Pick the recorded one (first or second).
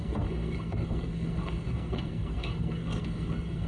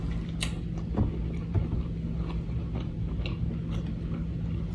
second